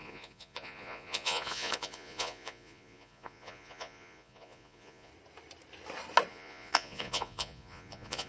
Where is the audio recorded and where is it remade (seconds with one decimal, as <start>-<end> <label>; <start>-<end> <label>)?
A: 0.0-5.1 remade; 5.1-6.3 recorded; 6.3-8.3 remade